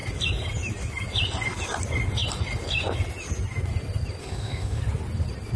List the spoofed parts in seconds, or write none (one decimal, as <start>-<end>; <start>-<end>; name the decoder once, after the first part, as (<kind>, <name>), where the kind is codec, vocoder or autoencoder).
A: 4.2-4.8 (autoencoder, DAC-VAE)